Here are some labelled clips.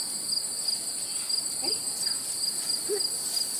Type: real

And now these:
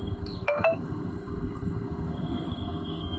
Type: fake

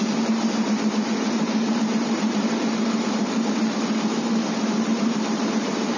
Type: fake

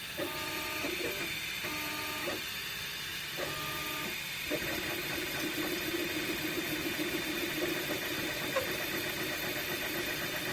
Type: fake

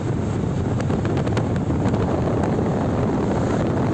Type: real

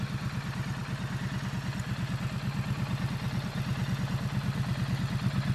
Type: real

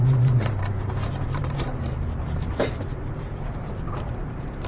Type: fake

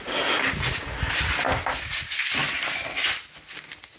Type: real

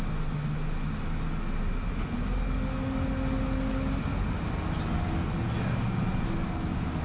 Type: real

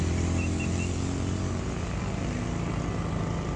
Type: real